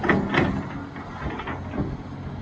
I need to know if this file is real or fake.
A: real